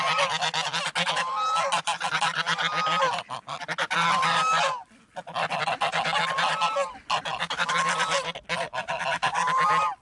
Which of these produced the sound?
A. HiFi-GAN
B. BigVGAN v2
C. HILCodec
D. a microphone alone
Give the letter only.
D